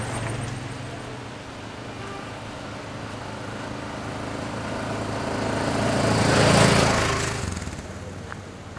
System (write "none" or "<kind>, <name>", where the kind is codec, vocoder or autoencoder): none